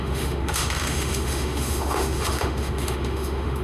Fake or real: fake